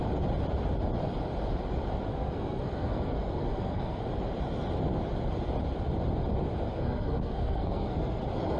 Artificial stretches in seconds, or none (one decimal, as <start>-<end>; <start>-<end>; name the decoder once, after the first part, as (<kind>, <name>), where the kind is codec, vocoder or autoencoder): 2.1-4.0 (codec, SNAC); 6.7-8.2